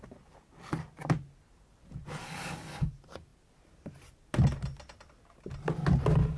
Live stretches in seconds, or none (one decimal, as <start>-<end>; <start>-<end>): 0.0-2.2; 2.9-6.4